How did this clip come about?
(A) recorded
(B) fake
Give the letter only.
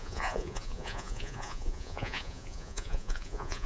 B